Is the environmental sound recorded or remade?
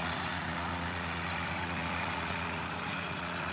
remade